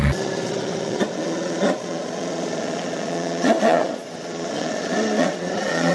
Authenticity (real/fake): fake